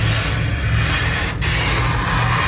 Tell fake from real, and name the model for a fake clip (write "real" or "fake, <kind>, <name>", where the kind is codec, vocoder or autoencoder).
real